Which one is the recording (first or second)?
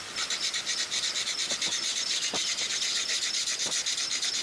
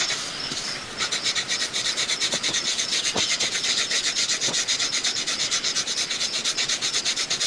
first